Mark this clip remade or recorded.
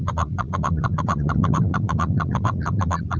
remade